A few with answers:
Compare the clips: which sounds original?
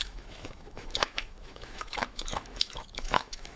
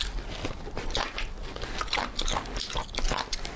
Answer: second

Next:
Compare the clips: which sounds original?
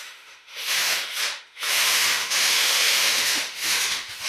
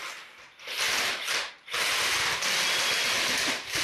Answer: second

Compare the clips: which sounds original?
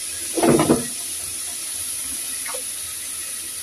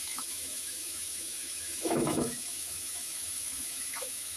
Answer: first